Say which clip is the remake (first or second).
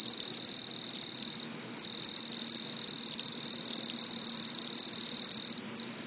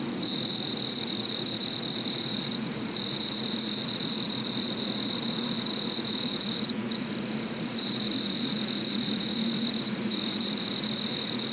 second